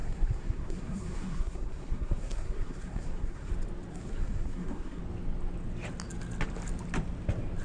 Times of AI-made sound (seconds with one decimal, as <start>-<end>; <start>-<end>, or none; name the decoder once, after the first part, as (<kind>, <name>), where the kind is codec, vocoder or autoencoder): 0.0-3.5 (codec, SNAC); 3.9-5.0